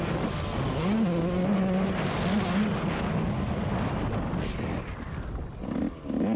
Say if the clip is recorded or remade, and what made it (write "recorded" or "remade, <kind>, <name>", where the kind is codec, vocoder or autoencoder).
recorded